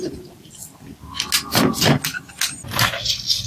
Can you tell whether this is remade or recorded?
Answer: recorded